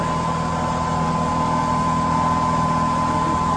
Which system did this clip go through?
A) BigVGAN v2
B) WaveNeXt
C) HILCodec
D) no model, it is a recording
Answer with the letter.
D